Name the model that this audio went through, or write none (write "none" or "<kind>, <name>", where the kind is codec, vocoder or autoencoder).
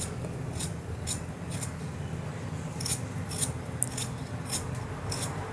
none